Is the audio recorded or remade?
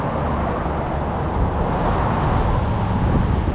recorded